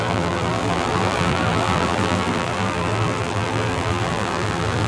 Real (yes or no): no